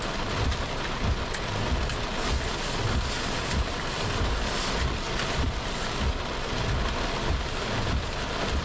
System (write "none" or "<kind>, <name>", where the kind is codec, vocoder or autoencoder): vocoder, BigVGAN v2